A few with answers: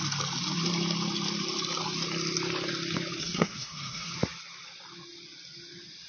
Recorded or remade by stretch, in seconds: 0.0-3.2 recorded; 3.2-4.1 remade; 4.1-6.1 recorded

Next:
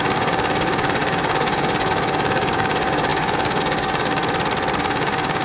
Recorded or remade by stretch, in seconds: 0.0-4.2 remade; 4.2-4.8 recorded; 4.8-5.4 remade

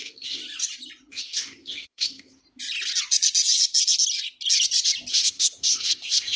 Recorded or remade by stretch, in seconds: 0.0-0.4 remade; 0.4-1.1 recorded; 1.1-2.4 remade; 2.4-5.1 recorded; 5.1-6.4 remade